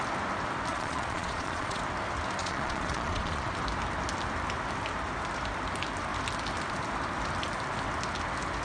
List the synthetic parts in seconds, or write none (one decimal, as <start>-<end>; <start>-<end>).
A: 0.7-1.8; 2.4-3.5